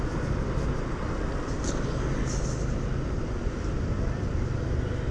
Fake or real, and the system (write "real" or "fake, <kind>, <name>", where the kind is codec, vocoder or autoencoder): real